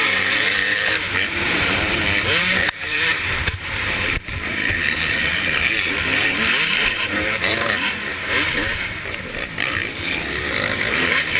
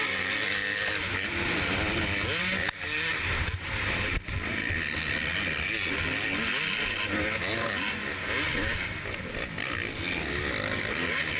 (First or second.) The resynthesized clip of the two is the first